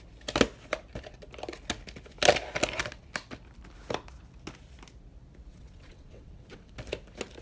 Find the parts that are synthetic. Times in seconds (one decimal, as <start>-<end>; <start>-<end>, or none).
5.5-6.7